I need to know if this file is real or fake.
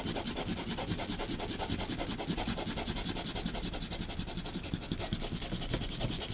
real